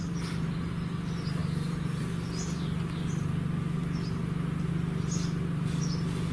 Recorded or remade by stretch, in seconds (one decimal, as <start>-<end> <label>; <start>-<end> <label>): 0.0-6.3 recorded